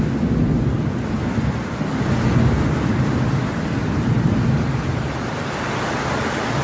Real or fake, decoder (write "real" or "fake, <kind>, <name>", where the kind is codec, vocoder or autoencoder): real